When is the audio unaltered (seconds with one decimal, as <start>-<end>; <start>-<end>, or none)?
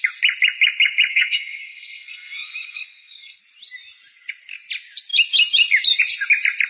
0.0-1.1; 3.4-6.7